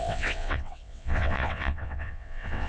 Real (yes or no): no